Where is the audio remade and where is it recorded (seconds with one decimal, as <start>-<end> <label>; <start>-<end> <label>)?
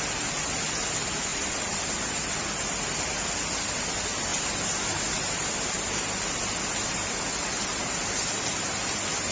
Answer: 0.0-1.3 recorded; 1.3-3.3 remade; 3.3-7.4 recorded; 7.4-8.5 remade; 8.5-9.3 recorded